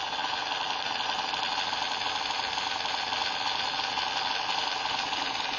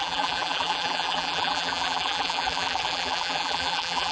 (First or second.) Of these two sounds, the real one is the first